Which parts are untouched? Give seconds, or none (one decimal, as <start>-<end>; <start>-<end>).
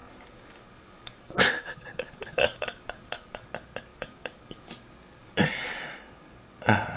3.5-3.9; 4.7-5.2; 5.8-7.0